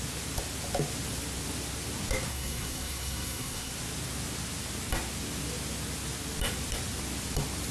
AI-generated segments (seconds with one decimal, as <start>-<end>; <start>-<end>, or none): 2.3-3.7